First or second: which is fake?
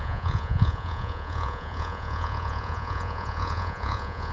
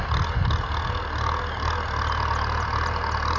first